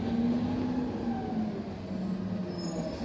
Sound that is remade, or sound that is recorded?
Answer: recorded